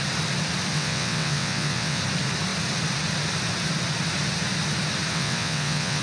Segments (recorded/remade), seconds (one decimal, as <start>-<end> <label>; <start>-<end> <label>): 0.0-0.7 recorded; 0.7-2.0 remade; 2.0-5.1 recorded; 5.1-6.0 remade